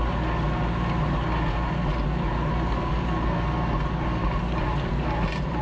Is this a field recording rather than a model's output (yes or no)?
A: yes